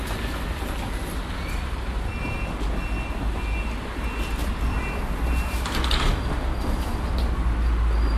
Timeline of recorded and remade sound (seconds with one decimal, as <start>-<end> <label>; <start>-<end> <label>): 0.0-8.2 recorded